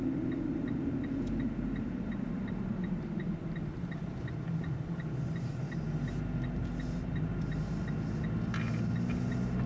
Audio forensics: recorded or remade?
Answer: recorded